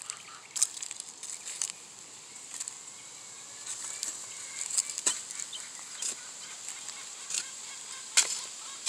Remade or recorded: recorded